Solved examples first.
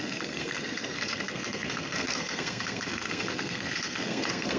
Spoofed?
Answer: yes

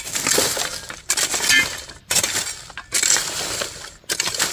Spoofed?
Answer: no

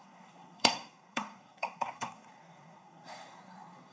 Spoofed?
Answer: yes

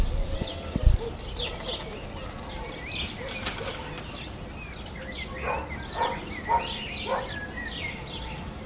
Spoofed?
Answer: no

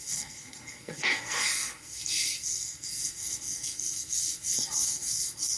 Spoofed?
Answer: yes